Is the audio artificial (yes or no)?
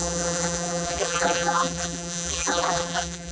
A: yes